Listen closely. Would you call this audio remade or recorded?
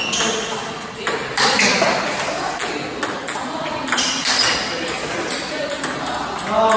recorded